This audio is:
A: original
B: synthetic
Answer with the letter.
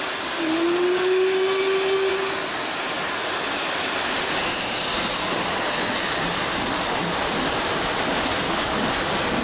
A